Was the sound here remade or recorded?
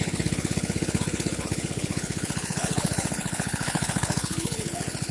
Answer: remade